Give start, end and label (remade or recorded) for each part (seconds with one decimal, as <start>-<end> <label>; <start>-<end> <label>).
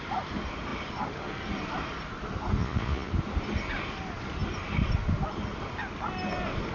0.0-2.6 recorded; 2.6-3.1 remade; 3.1-6.7 recorded